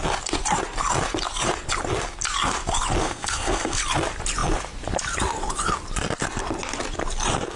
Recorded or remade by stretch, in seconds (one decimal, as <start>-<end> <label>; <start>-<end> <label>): 0.0-3.0 recorded; 3.0-3.8 remade; 3.8-7.6 recorded